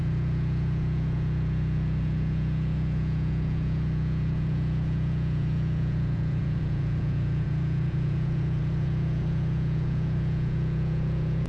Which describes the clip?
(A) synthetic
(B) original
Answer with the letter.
A